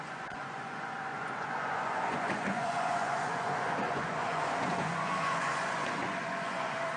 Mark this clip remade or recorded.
remade